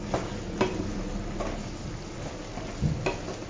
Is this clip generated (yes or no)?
no